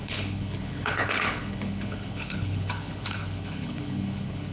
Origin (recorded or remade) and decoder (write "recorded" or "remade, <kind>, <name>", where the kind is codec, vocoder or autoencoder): remade, codec, HILCodec